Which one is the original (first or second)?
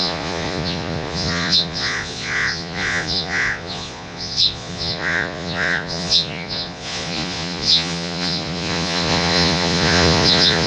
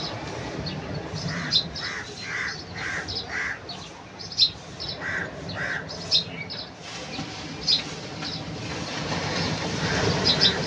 second